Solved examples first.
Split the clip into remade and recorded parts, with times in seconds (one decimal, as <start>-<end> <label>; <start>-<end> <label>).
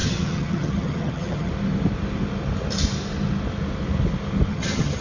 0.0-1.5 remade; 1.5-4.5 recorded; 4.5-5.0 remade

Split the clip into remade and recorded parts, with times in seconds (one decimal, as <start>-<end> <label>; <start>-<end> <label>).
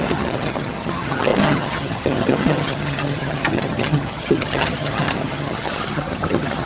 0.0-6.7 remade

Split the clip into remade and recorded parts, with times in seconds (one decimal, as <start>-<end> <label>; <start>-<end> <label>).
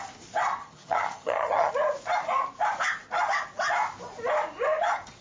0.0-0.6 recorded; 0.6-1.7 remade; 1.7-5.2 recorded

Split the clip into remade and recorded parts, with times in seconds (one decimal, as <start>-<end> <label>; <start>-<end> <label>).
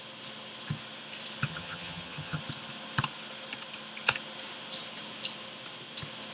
0.0-1.5 recorded; 1.5-2.4 remade; 2.4-6.3 recorded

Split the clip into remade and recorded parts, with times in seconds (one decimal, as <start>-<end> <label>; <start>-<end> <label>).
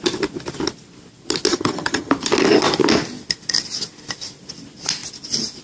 0.0-1.5 recorded; 1.5-2.1 remade; 2.1-5.6 recorded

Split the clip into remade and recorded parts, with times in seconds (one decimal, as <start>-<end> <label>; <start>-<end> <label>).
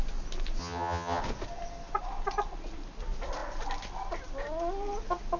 0.0-0.6 recorded; 0.6-1.2 remade; 1.2-5.4 recorded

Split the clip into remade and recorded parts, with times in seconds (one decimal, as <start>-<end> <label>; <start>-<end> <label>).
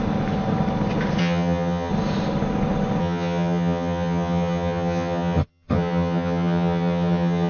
0.0-1.2 recorded; 1.2-1.9 remade; 1.9-3.0 recorded; 3.0-7.5 remade